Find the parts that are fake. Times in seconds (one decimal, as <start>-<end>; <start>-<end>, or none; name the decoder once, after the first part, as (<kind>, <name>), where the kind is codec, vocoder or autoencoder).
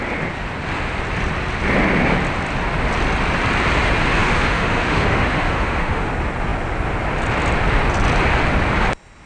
4.2-6.1 (autoencoder, DAC-VAE)